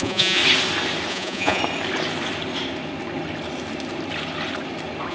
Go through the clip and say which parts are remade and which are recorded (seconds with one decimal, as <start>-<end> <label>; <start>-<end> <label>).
0.0-0.4 remade; 0.4-1.1 recorded; 1.1-1.6 remade; 1.6-5.1 recorded